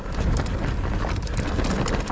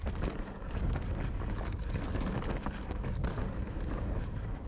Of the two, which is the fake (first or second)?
second